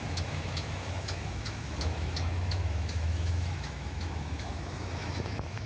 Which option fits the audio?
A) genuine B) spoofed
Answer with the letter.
B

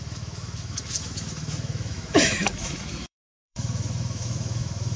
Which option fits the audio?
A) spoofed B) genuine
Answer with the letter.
A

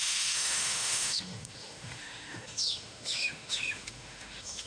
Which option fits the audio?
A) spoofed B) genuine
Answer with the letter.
A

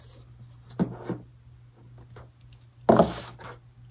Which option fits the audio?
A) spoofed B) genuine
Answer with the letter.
B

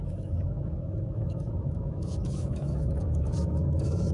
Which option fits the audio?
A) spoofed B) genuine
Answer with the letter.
A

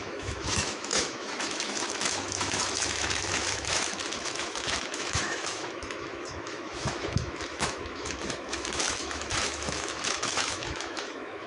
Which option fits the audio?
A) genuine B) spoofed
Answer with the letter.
B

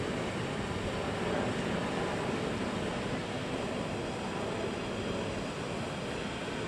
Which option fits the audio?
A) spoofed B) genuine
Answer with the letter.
B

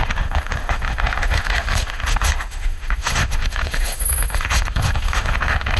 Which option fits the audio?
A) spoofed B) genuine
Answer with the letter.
A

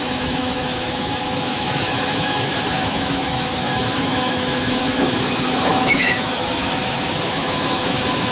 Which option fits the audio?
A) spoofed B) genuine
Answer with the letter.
A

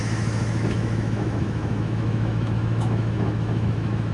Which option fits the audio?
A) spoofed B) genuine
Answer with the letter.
A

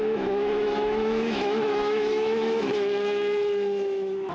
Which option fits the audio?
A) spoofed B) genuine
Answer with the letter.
A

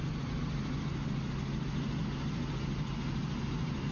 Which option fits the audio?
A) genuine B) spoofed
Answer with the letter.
A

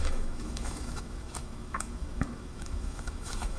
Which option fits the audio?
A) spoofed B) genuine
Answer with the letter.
A